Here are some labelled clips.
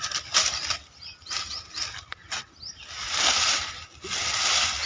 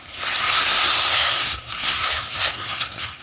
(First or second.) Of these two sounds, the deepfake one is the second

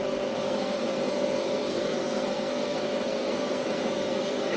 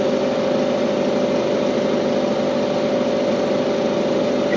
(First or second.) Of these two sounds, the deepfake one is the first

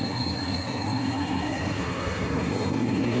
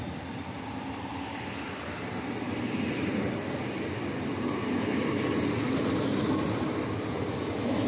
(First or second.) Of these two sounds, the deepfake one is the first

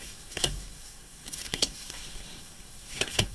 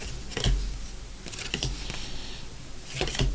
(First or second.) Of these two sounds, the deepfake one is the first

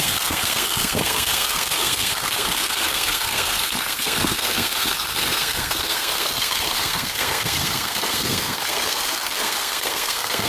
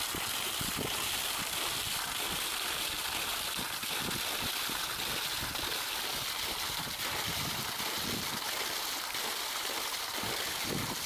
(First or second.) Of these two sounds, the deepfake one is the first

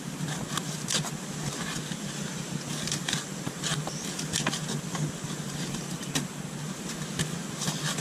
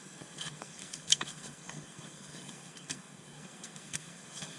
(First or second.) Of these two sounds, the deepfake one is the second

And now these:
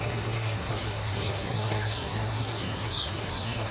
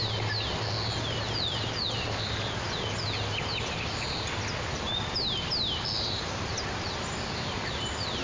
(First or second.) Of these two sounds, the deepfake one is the first